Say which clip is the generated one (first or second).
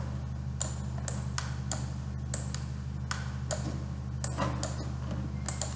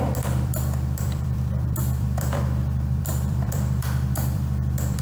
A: second